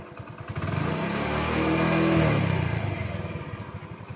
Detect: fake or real real